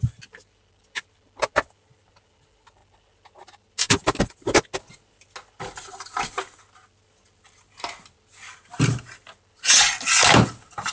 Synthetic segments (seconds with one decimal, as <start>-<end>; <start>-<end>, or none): none

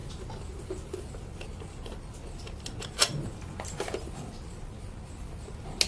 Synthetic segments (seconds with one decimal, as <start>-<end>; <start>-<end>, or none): none

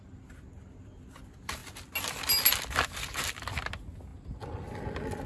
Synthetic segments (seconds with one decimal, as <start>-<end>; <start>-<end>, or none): none

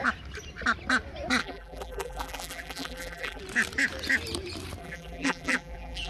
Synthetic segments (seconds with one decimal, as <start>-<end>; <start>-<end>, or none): 1.4-3.4; 4.8-6.1

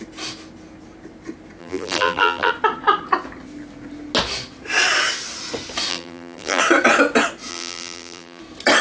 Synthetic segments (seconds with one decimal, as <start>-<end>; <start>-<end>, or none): 1.6-2.5; 5.9-6.6; 7.5-8.4

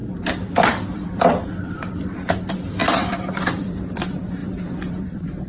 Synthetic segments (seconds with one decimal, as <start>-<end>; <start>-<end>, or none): 0.0-2.1; 2.8-4.0; 4.4-5.5

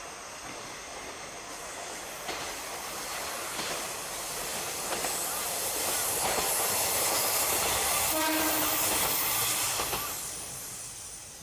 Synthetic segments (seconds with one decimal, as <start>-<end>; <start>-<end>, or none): none

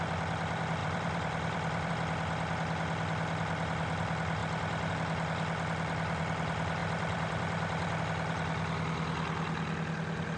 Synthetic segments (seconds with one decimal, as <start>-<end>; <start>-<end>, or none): 0.8-1.9; 6.8-8.0